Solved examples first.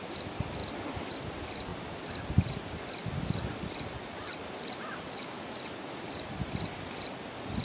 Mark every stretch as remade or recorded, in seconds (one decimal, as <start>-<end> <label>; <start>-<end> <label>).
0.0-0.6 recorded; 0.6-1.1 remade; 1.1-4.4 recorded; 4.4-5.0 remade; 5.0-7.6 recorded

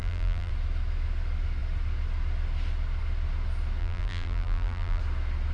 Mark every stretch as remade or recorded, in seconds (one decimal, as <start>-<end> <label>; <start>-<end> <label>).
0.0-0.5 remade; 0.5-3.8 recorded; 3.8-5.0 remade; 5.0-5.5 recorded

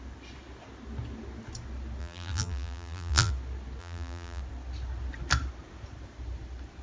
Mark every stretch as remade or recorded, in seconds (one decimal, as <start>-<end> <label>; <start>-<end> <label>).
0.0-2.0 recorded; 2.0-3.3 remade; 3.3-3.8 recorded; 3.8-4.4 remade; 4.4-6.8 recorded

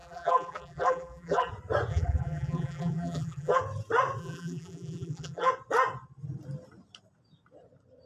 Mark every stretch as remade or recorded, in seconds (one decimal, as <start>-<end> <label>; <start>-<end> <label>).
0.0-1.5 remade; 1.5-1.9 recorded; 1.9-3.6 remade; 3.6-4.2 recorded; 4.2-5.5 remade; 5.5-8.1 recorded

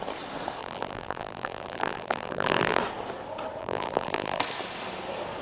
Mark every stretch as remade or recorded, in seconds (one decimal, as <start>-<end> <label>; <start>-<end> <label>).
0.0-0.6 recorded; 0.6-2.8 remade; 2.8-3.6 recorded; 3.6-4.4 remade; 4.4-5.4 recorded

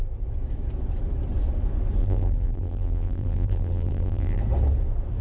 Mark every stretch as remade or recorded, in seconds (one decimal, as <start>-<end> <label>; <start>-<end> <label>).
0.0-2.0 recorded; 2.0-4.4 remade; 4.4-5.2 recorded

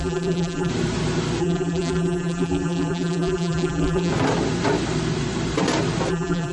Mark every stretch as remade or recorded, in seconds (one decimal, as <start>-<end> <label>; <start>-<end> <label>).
0.0-0.7 remade; 0.7-1.4 recorded; 1.4-4.1 remade; 4.1-6.1 recorded; 6.1-6.5 remade

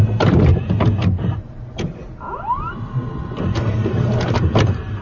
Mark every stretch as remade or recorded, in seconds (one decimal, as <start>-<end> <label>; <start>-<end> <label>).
0.0-2.0 remade; 2.0-2.7 recorded; 2.7-5.0 remade